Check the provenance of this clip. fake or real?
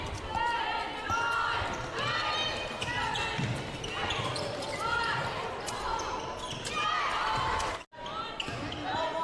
real